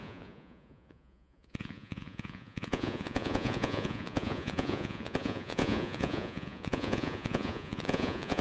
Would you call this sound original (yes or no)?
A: no